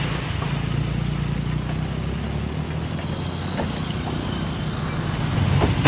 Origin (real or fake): real